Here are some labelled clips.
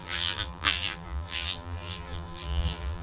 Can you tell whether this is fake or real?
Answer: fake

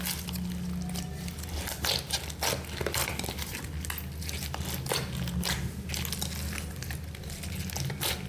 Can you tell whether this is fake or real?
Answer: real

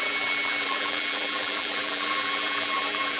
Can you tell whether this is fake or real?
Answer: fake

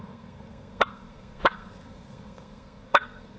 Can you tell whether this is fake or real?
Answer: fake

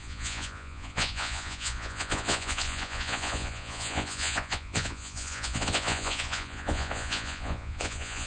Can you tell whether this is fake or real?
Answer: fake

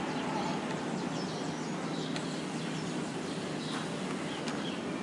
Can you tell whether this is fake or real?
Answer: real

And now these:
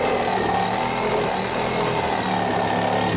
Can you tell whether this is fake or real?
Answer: real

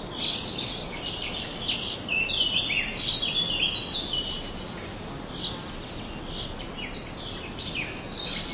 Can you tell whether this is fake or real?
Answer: real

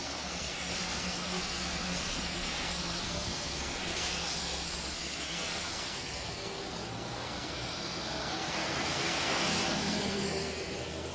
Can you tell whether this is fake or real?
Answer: fake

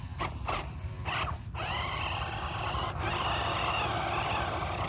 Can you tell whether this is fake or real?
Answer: real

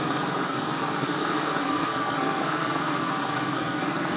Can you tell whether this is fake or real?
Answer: fake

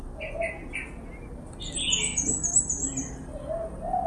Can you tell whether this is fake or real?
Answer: real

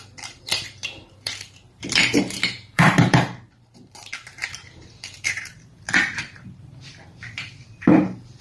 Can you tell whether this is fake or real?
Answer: fake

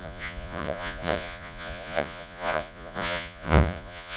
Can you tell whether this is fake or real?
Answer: fake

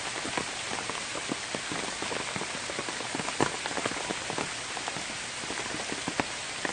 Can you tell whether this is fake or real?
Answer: real